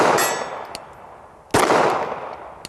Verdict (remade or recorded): recorded